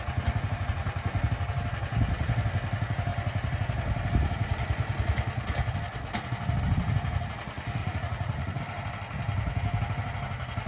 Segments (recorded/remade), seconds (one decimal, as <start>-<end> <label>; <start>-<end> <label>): 0.0-7.8 recorded; 7.8-8.6 remade; 8.6-10.7 recorded